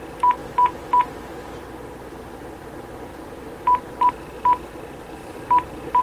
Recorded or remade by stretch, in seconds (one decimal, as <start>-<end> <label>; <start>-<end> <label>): 0.0-3.1 recorded; 3.1-4.1 remade; 4.1-5.2 recorded; 5.2-6.0 remade